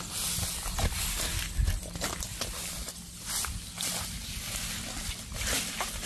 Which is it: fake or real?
real